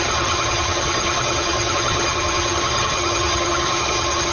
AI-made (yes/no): yes